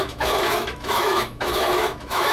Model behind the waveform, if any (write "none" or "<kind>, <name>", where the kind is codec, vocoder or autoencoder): autoencoder, DAC-VAE